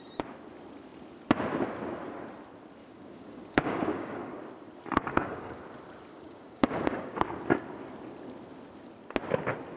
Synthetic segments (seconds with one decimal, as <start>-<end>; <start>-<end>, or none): 2.8-4.3; 5.1-5.6; 6.1-7.3